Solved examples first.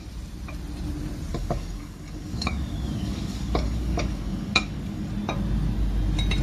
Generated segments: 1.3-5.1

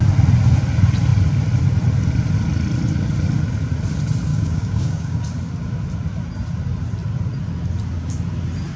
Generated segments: 4.3-5.2

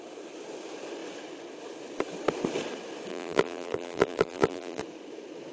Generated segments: 3.1-4.8

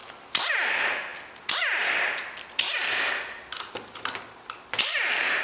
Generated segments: 0.0-0.7

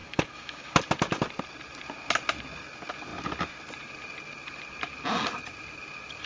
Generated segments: 0.0-0.7

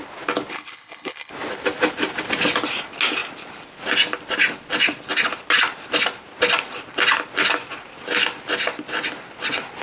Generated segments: 0.5-1.3

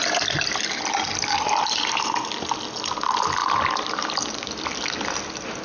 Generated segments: none

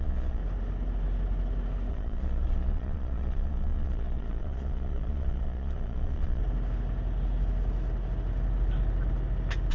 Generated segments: 0.0-0.4; 1.9-6.4